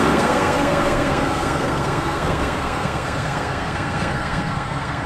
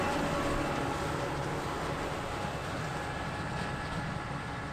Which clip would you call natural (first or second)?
second